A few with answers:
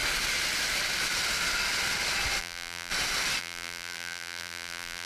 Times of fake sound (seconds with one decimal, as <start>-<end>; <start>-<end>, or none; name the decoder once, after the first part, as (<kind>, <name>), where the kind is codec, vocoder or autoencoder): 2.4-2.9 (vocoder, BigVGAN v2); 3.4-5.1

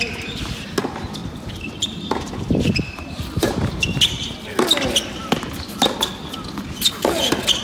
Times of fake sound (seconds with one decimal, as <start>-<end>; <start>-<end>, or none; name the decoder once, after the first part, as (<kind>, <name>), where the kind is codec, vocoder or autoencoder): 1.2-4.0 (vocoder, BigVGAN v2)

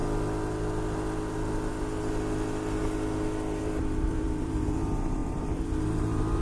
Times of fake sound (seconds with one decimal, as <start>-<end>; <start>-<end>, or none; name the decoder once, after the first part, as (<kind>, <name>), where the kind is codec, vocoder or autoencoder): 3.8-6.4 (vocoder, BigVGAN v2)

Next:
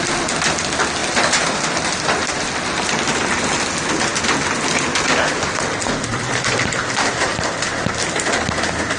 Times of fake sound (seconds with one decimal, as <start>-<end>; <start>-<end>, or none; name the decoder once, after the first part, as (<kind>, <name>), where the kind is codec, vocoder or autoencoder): 1.0-3.5 (vocoder, BigVGAN v2); 4.1-4.6; 6.1-6.8